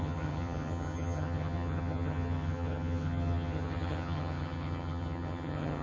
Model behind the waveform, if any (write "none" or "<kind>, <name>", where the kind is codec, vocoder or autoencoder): vocoder, HiFi-GAN